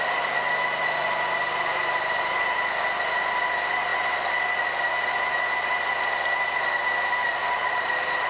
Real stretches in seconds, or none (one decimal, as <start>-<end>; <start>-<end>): 0.0-1.0; 2.3-7.4; 7.9-8.3